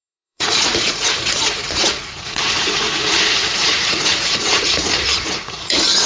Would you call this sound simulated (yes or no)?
yes